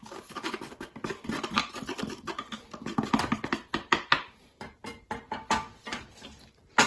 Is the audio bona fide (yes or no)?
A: no